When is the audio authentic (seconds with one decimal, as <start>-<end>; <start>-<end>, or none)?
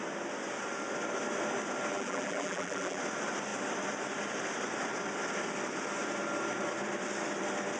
0.0-1.9; 3.0-7.8